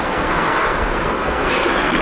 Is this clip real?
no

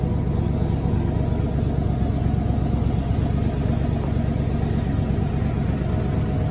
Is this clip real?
yes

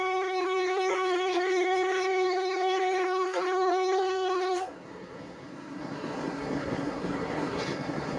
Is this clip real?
no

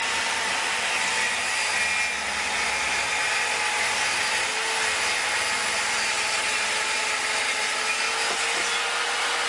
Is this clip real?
yes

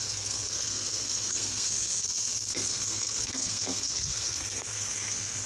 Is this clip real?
no